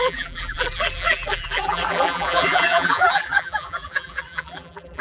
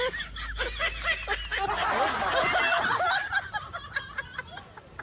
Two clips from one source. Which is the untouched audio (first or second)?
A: second